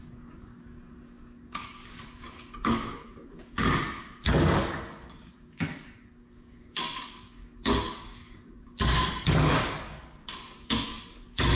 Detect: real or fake fake